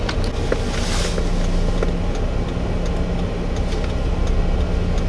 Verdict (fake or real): real